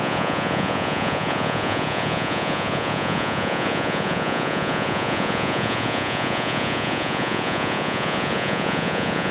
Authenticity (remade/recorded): remade